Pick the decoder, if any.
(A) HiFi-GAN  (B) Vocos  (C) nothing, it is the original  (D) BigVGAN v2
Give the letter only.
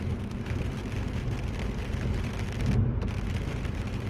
C